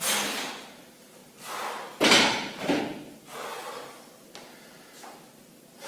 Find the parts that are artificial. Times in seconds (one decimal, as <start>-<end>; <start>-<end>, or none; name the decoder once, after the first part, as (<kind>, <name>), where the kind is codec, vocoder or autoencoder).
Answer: none